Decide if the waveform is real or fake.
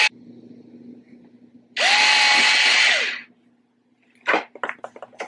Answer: real